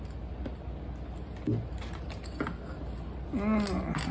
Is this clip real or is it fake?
real